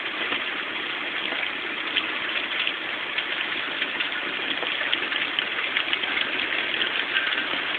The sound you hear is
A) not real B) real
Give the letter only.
B